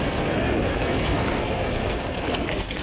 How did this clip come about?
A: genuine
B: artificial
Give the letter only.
B